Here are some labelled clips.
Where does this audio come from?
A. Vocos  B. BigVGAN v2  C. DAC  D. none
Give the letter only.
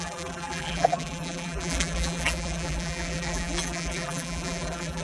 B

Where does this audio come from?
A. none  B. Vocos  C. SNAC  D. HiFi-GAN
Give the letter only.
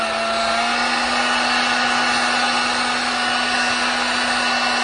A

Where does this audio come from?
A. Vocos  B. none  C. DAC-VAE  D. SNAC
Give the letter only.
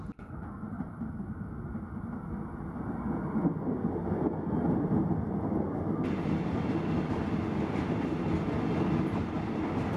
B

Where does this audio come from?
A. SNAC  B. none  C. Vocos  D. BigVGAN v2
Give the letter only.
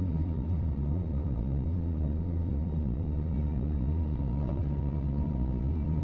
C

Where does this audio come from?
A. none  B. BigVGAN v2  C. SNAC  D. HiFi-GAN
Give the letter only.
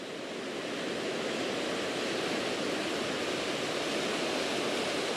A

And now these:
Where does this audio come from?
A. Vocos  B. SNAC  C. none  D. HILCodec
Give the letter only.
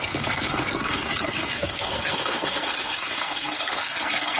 B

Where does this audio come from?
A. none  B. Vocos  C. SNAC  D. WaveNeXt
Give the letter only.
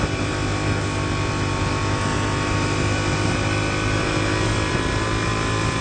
A